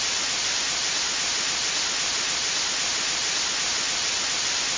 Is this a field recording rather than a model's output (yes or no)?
yes